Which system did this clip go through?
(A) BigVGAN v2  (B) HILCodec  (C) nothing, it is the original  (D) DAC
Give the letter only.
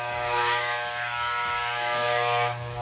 D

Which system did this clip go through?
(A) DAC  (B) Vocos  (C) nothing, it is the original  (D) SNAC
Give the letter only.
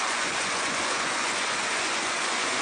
B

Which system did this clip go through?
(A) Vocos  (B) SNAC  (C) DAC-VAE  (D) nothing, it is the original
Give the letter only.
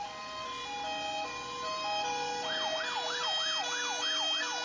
D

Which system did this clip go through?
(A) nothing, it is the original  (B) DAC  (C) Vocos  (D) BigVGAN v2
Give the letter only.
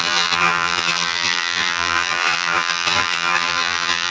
D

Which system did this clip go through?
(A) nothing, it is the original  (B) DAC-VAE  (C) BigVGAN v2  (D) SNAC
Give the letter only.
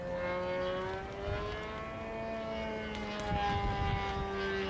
A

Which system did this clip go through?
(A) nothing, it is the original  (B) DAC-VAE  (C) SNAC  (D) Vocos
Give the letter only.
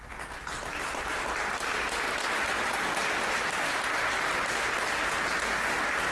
A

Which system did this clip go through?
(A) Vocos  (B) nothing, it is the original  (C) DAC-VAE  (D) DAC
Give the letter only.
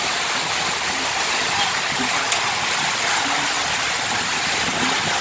B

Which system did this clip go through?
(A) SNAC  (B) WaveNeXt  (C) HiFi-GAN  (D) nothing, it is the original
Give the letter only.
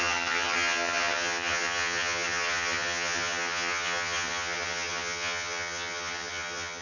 C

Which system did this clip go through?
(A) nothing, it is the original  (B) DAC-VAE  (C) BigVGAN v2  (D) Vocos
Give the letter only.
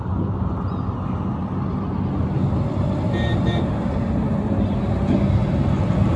A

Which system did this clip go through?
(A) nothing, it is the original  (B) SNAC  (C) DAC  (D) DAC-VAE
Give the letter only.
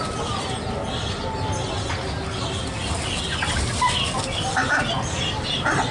A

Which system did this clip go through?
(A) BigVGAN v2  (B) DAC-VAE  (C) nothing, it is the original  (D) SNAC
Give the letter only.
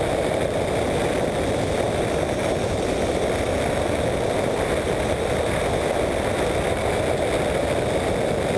C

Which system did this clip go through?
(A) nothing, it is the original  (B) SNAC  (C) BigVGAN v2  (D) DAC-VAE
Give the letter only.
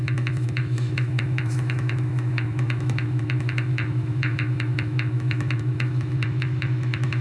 D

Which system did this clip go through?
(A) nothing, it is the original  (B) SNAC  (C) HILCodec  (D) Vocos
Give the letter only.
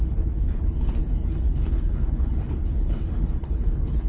C